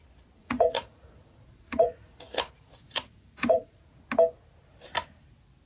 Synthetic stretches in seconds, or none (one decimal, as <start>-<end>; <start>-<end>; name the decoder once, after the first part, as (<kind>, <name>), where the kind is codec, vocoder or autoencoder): 0.4-3.8 (vocoder, Vocos)